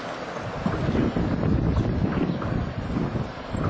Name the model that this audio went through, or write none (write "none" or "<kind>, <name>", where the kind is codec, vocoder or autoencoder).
none